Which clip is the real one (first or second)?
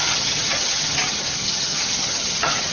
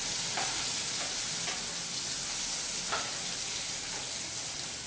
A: second